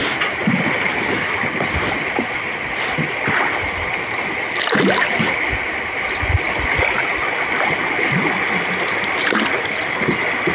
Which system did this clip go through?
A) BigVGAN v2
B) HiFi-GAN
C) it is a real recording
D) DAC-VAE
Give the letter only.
C